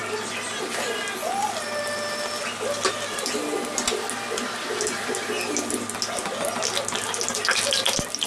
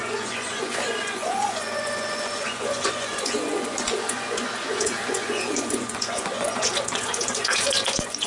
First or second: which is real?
first